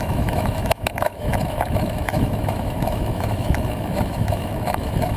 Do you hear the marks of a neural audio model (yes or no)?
yes